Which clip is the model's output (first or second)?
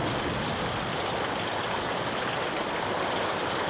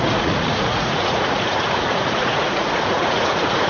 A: second